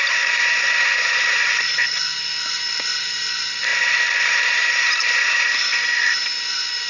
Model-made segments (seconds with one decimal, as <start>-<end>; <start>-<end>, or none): 0.0-6.9

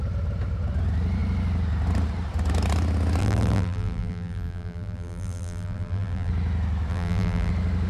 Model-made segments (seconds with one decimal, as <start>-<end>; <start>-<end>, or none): 3.2-6.3; 6.9-7.5

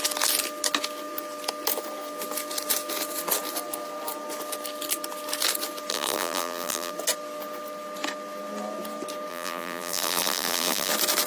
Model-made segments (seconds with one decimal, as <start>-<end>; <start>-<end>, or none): 5.9-6.9; 9.3-10.9

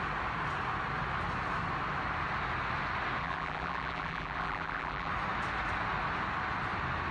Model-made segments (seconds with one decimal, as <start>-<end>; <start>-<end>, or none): 3.2-5.1

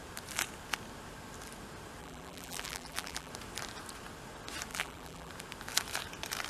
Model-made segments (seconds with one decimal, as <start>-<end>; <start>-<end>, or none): 2.0-3.3; 4.7-5.3

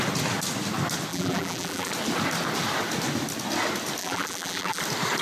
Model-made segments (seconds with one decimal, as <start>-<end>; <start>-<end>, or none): 1.1-1.9; 4.0-4.8

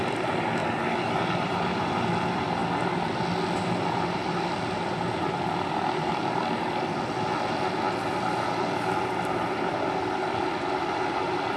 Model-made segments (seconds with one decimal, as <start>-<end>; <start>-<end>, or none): 0.0-0.6; 1.2-2.6; 3.6-4.2; 4.8-6.2; 9.2-11.6